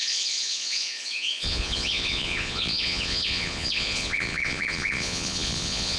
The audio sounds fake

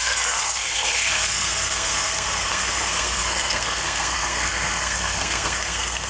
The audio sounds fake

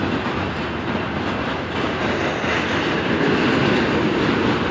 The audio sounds real